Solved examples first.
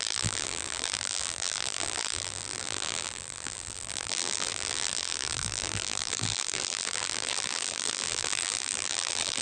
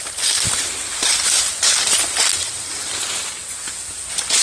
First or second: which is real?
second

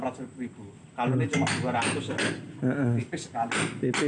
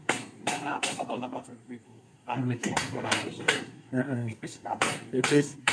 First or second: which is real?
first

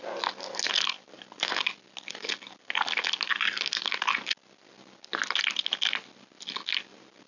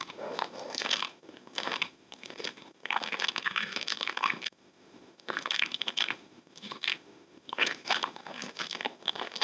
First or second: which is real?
first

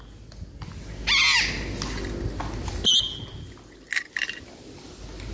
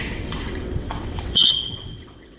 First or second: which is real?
first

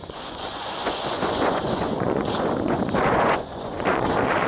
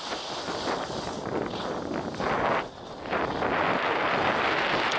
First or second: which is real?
second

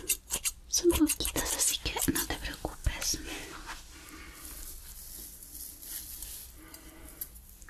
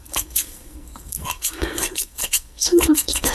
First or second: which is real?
first